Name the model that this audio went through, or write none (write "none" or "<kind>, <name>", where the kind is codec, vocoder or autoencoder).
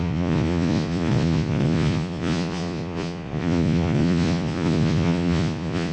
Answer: vocoder, Vocos